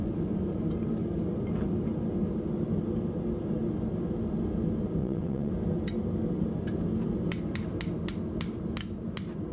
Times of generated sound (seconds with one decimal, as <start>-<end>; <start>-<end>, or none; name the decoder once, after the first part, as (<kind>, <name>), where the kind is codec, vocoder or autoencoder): 5.0-5.5 (vocoder, WaveNeXt)